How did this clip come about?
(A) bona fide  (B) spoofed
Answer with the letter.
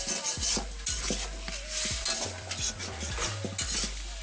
A